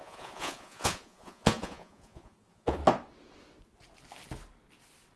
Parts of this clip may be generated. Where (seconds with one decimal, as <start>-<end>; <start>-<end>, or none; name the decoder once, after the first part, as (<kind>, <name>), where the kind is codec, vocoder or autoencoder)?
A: 0.0-2.8 (vocoder, Vocos)